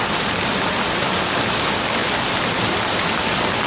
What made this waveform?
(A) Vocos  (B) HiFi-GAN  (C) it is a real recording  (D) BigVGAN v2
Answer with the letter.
C